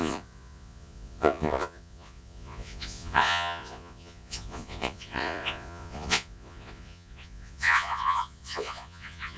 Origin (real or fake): fake